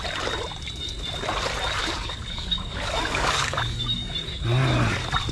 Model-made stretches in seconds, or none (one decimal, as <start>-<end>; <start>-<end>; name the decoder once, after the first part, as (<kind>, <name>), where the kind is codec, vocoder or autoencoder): 1.8-4.1 (codec, DAC)

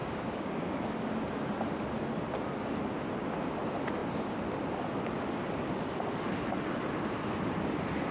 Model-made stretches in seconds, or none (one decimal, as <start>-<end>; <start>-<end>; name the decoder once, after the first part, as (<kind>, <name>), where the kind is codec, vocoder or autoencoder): 0.0-0.9 (codec, DAC)